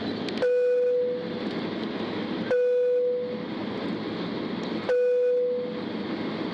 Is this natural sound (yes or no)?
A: yes